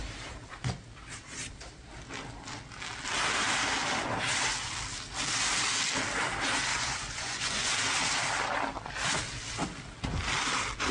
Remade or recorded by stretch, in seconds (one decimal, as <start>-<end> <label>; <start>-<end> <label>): 0.0-6.7 recorded; 6.7-7.7 remade; 7.7-10.9 recorded